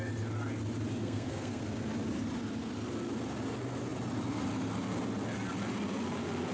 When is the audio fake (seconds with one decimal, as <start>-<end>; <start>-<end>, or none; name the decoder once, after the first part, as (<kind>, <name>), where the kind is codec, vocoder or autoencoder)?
1.0-1.6 (codec, SNAC)